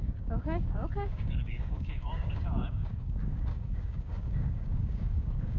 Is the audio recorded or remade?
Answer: remade